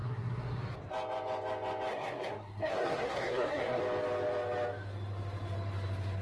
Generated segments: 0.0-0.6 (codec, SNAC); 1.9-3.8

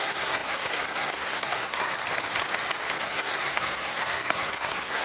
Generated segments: 0.0-1.9 (codec, SNAC); 3.0-5.0

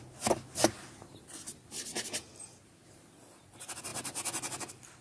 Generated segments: none

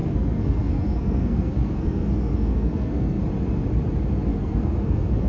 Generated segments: 0.0-3.2 (codec, SNAC); 4.3-5.3

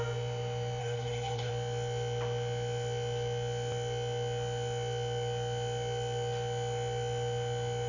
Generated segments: 0.8-1.5 (codec, SNAC)

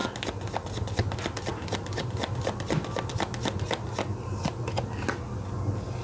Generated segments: none

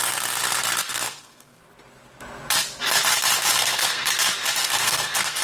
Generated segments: 0.8-1.6 (codec, SNAC); 3.5-4.1; 4.6-5.4

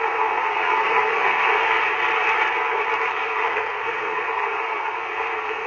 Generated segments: 0.0-1.8 (codec, SNAC); 3.1-5.7